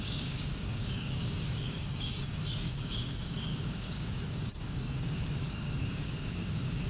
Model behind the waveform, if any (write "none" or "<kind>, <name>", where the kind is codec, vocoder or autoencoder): codec, DAC